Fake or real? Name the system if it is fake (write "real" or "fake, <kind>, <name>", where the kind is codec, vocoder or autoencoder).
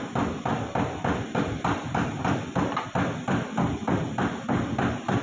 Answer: real